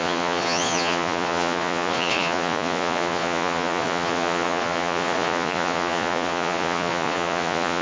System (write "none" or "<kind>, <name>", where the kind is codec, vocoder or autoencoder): vocoder, Vocos